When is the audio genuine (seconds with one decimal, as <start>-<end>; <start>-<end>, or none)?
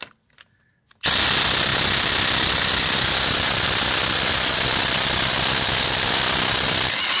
0.0-7.2